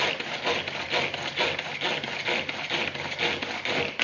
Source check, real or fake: real